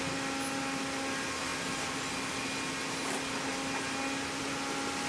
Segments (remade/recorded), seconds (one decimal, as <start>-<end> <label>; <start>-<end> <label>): 0.0-5.1 recorded